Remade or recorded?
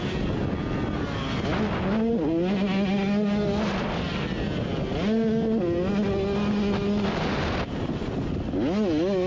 recorded